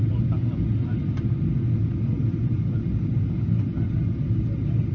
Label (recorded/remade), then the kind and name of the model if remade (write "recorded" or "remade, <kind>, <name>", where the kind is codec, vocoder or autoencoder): recorded